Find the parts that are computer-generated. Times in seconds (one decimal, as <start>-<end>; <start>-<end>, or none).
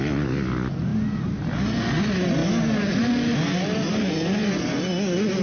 none